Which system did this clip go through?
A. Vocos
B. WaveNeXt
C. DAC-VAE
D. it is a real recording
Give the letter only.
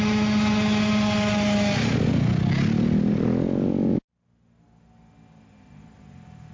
D